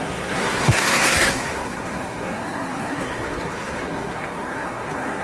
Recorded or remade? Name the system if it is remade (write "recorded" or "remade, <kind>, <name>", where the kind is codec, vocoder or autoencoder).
remade, codec, SNAC